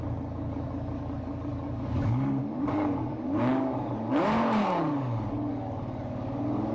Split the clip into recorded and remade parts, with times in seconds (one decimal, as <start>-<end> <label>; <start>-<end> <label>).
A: 0.0-6.7 remade

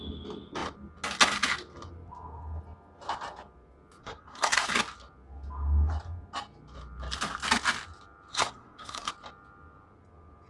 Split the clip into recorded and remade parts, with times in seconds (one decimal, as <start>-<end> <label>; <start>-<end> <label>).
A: 0.0-4.0 recorded; 4.0-4.7 remade; 4.7-8.3 recorded; 8.3-9.1 remade; 9.1-10.5 recorded

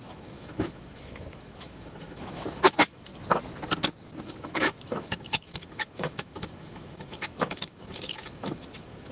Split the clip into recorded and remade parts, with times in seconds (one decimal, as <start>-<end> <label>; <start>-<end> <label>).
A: 0.0-3.1 remade; 3.1-4.2 recorded; 4.2-9.1 remade

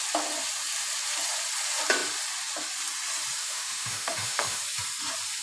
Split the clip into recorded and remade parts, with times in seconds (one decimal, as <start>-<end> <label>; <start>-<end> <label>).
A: 0.0-3.4 recorded; 3.4-4.6 remade; 4.6-5.4 recorded

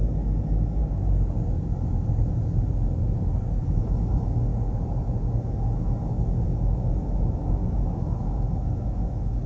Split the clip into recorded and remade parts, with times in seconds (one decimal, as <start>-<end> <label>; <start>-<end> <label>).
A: 0.0-0.8 remade; 0.8-3.6 recorded; 3.6-4.5 remade; 4.5-5.4 recorded; 5.4-9.5 remade

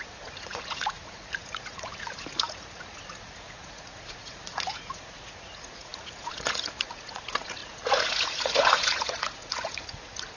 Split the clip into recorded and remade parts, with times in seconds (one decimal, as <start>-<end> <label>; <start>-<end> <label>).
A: 0.0-10.4 remade